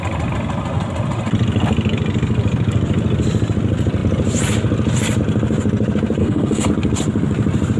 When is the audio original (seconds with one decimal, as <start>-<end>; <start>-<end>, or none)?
0.0-6.2; 6.7-7.8